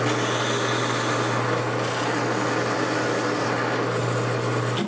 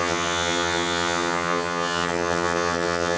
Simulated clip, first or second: second